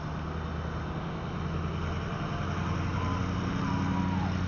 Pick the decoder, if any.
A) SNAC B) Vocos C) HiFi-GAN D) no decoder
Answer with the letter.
D